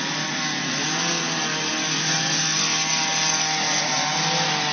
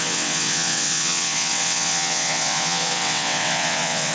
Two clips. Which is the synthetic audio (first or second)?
second